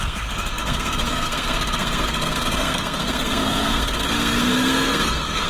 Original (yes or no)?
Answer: no